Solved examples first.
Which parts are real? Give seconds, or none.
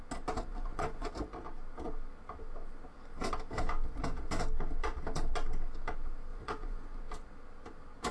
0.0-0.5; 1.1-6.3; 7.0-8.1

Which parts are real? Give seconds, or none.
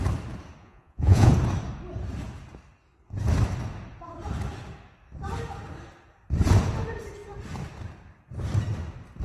0.0-0.6; 1.3-9.2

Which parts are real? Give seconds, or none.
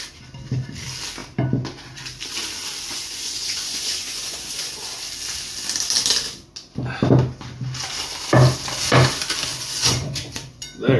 0.0-2.9; 5.0-9.5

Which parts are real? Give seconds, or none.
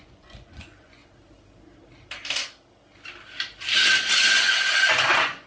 1.0-4.3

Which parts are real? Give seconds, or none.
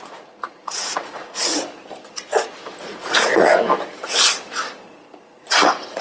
1.5-2.8; 3.5-5.2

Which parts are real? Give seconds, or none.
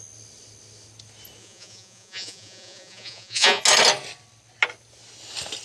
0.0-1.4; 3.6-5.6